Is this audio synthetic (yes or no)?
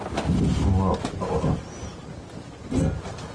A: no